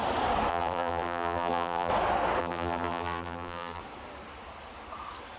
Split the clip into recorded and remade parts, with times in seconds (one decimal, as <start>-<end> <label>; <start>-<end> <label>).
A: 0.0-0.5 recorded; 0.5-1.9 remade; 1.9-2.4 recorded; 2.4-3.8 remade; 3.8-5.4 recorded